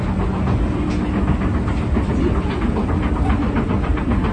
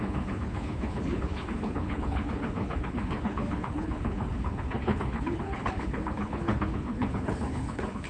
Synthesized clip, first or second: second